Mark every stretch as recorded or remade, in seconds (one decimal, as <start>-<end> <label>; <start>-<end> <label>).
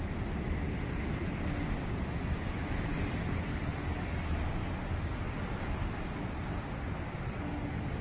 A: 0.0-8.0 recorded